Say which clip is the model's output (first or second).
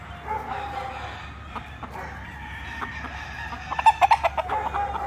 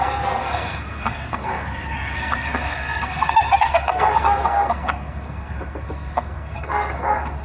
second